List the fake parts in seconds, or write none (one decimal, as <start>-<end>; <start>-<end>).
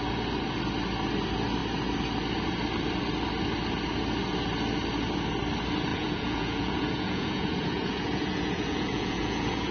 5.9-9.7